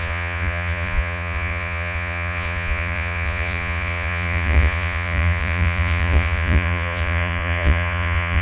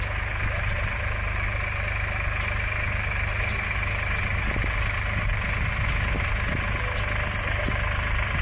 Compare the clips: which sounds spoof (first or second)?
first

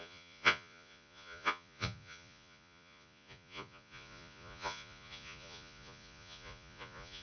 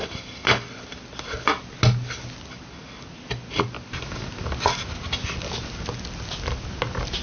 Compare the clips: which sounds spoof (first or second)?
first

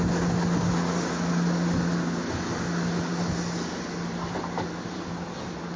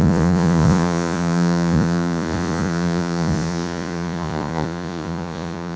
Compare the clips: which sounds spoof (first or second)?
second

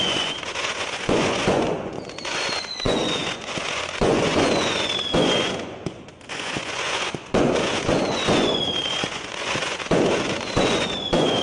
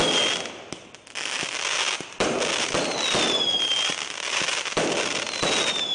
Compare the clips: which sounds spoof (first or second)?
first